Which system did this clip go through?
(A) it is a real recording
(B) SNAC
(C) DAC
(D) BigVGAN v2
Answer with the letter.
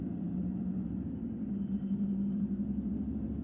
D